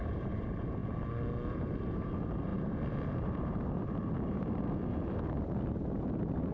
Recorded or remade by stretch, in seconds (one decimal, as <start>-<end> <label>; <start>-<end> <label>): 0.0-0.8 remade; 0.8-1.5 recorded; 1.5-6.5 remade